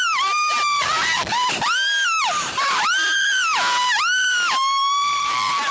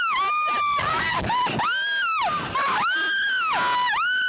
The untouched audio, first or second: second